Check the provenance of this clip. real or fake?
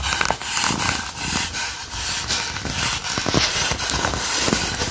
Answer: real